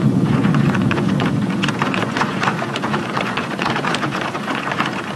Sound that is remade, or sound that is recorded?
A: remade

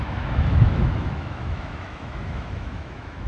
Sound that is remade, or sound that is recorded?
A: remade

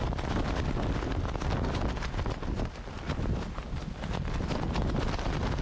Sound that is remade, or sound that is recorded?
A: recorded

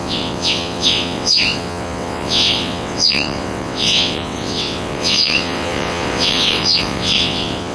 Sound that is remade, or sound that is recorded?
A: remade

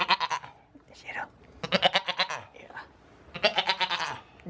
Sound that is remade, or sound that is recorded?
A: recorded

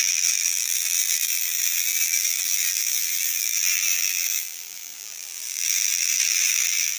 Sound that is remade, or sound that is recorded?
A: remade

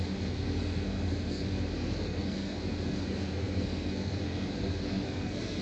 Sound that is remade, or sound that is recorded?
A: remade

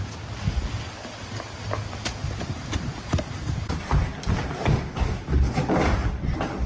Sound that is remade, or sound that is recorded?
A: recorded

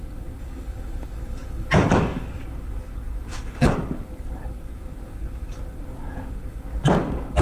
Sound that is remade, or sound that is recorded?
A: remade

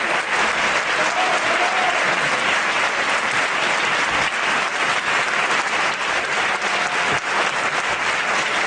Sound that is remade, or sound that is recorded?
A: remade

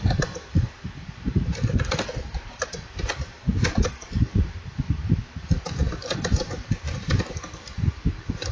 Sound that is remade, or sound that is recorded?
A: remade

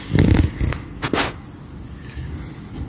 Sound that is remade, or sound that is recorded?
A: recorded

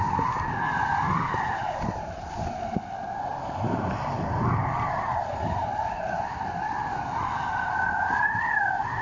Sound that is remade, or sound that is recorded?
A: recorded